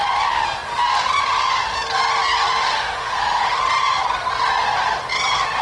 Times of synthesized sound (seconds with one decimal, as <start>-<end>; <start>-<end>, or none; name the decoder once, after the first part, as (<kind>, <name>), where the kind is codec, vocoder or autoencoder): 2.6-3.6 (autoencoder, DAC-VAE)